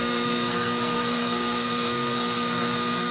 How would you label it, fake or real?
fake